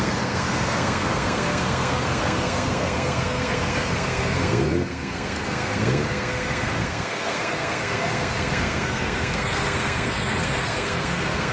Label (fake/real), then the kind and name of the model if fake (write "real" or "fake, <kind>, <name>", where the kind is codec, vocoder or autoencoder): fake, codec, SNAC